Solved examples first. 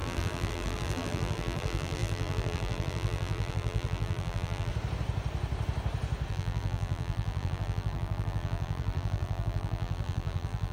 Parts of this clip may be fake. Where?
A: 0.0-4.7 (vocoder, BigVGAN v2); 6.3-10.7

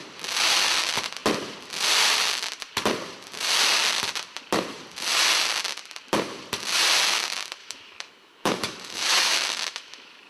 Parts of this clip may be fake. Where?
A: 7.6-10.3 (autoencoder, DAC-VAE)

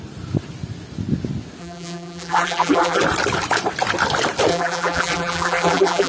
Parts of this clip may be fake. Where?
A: 1.6-3.0 (vocoder, BigVGAN v2); 4.5-6.1

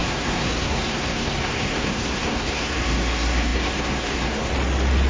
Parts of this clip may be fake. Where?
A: 0.0-4.5 (codec, SNAC)

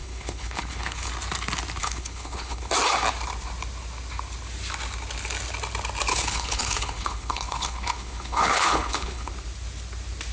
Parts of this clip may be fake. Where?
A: 0.0-1.1 (codec, HILCodec); 1.8-2.7; 6.1-9.3

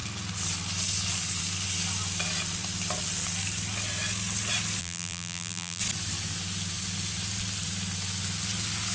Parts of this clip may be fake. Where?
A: 4.8-5.8 (vocoder, BigVGAN v2)

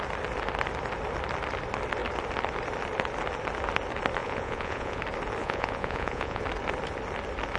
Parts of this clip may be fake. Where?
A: 4.2-5.0 (vocoder, Vocos); 5.4-6.4

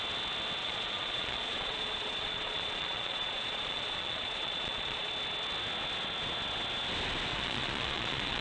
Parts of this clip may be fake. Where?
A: 0.6-5.1 (vocoder, Vocos); 7.3-8.4